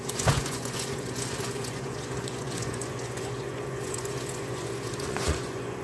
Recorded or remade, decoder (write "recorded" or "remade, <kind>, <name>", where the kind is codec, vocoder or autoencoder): remade, vocoder, Vocos